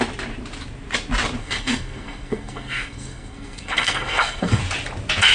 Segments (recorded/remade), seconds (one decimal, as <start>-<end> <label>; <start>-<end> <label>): 0.0-1.4 recorded; 1.4-4.6 remade; 4.6-5.3 recorded